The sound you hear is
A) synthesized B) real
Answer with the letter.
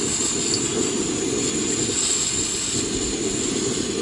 B